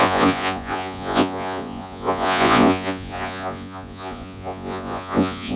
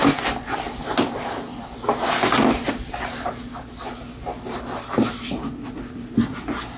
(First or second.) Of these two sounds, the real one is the second